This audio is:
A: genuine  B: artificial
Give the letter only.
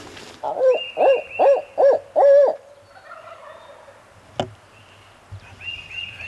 A